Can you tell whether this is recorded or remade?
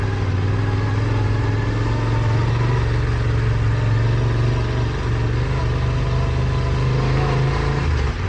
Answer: recorded